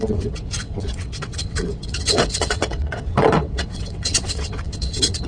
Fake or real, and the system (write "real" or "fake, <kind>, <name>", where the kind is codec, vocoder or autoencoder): fake, vocoder, WaveNeXt